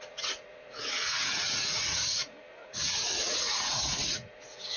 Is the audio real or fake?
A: fake